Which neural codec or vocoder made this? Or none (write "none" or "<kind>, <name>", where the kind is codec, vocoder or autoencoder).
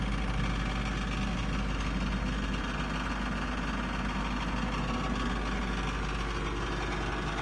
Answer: none